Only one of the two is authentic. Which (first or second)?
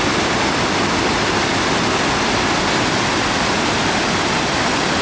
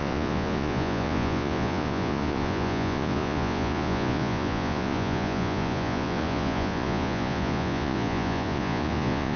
first